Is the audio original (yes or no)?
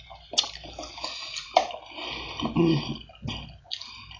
yes